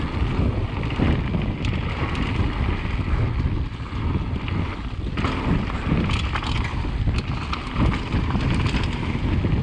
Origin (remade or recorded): recorded